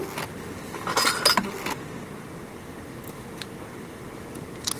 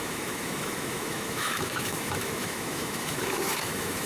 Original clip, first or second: first